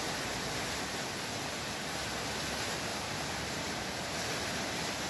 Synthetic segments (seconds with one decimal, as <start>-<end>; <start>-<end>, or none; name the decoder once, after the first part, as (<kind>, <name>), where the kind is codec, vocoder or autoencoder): none